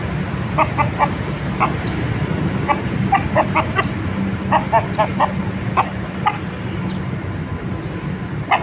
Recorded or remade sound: recorded